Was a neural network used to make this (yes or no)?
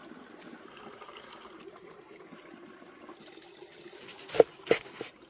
no